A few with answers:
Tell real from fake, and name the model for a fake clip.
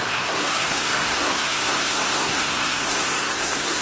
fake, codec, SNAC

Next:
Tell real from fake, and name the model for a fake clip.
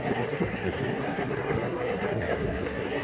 fake, codec, SNAC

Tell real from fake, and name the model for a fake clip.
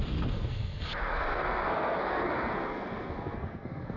fake, codec, SNAC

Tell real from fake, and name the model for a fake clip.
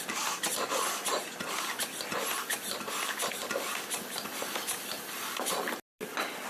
real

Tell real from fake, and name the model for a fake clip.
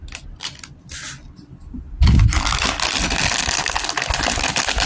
real